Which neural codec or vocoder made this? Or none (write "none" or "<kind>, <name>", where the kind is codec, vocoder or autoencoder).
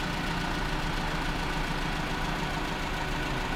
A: none